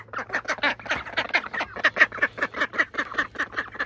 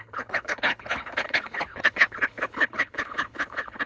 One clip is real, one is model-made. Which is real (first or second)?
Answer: first